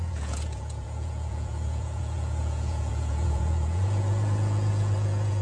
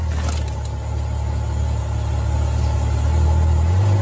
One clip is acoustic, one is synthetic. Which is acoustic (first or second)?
second